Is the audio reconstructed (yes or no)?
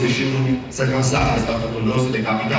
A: yes